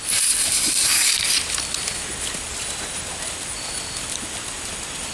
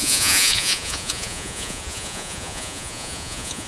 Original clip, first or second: first